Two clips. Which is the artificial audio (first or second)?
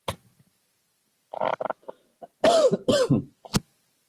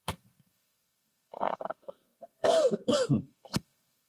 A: second